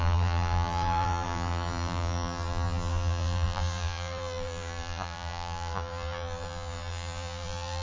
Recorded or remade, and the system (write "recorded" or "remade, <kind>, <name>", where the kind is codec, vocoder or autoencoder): remade, vocoder, BigVGAN v2